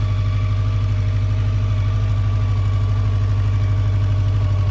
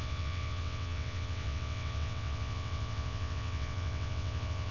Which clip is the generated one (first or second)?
second